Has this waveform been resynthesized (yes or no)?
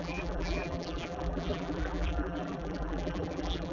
yes